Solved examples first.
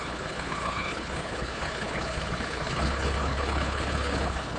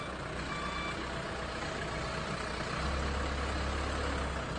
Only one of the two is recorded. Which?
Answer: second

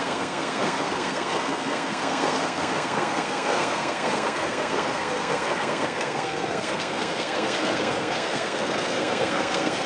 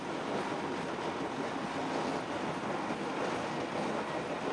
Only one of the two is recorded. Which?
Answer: second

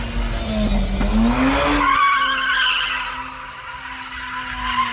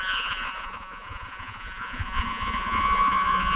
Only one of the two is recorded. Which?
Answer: first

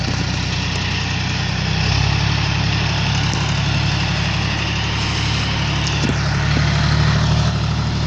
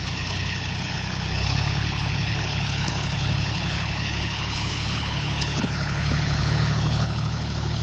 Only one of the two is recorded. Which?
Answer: first